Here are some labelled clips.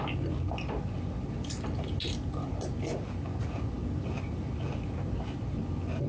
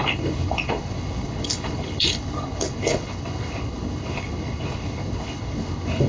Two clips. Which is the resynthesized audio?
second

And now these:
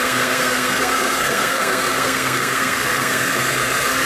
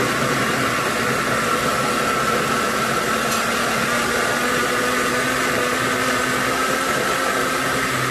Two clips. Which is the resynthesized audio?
first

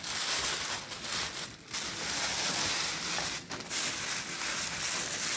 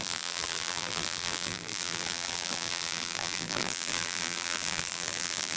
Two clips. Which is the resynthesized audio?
second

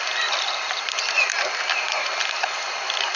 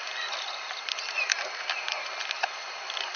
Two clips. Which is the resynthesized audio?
first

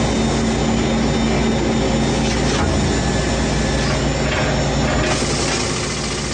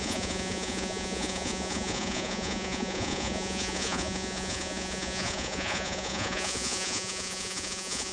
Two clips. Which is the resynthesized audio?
second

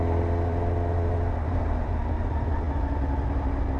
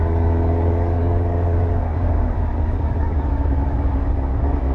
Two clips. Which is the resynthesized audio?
second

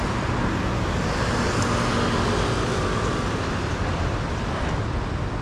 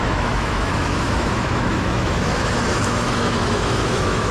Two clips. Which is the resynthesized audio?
second